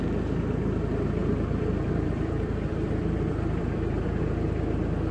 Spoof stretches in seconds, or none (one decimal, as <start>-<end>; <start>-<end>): 1.2-4.2